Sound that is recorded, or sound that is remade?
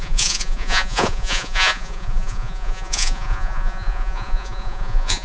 remade